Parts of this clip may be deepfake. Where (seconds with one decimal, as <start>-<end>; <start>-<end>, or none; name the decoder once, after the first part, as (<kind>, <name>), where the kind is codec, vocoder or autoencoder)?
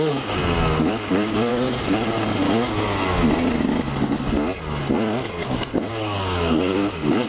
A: 0.0-0.4 (codec, DAC); 0.9-1.5; 5.9-7.3